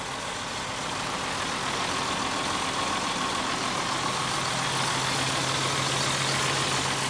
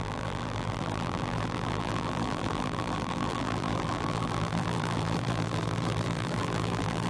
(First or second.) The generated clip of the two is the second